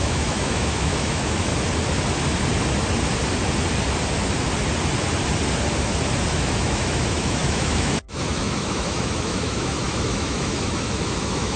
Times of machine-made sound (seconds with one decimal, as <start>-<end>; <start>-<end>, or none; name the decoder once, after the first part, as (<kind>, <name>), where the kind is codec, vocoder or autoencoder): 0.0-1.5 (autoencoder, DAC-VAE); 6.3-11.6